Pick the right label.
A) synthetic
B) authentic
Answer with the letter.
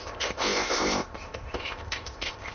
A